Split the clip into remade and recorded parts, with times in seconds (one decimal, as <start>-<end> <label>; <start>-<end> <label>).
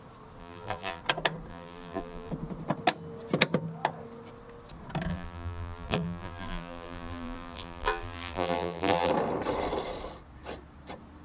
0.0-0.4 recorded; 0.4-1.0 remade; 1.0-1.5 recorded; 1.5-2.3 remade; 2.3-5.1 recorded; 5.1-9.1 remade; 9.1-11.2 recorded